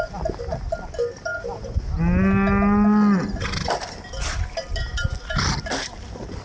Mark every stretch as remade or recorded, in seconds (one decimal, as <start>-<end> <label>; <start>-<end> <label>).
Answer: 0.0-6.4 recorded